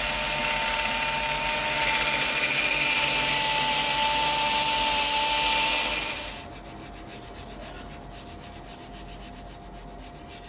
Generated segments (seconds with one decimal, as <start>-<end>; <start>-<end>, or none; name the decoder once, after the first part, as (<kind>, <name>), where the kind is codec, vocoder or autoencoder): none